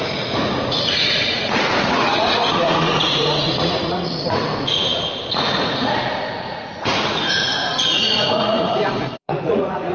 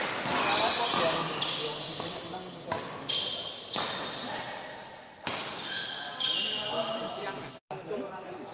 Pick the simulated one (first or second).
first